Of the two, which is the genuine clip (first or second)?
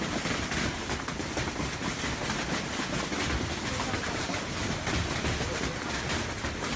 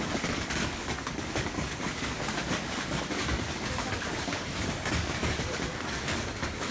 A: first